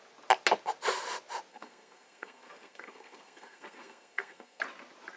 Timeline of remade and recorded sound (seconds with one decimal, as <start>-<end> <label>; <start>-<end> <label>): 0.0-1.5 recorded; 1.5-4.6 remade; 4.6-5.2 recorded